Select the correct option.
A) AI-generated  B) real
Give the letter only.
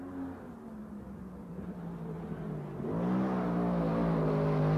B